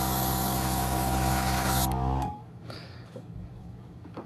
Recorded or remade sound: remade